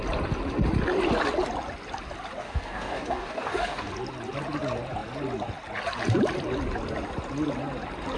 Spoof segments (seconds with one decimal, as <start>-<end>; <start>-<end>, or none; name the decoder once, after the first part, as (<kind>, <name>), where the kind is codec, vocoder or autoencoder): 2.4-3.9 (codec, DAC)